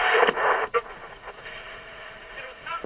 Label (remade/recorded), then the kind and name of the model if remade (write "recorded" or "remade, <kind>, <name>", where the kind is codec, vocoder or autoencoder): remade, vocoder, Vocos